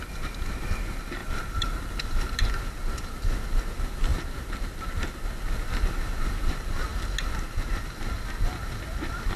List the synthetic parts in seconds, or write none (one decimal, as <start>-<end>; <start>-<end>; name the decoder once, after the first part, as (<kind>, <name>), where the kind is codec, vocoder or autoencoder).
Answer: 1.2-2.5 (vocoder, BigVGAN v2)